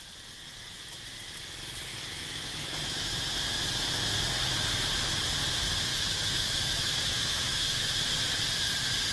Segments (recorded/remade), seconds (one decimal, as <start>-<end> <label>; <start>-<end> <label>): 0.0-1.9 recorded; 1.9-3.1 remade; 3.1-5.9 recorded; 5.9-8.0 remade; 8.0-9.1 recorded